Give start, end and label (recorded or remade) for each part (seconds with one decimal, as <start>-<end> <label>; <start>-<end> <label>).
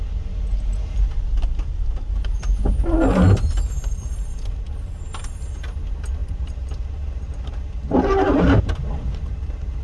0.0-6.2 recorded; 6.2-9.8 remade